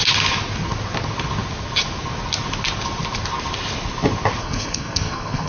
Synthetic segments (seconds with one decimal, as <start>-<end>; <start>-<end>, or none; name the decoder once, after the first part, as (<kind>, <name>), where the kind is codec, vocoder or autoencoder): 4.4-5.5 (codec, SNAC)